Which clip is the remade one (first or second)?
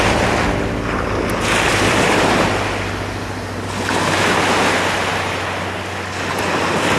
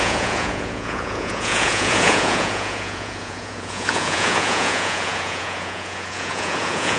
second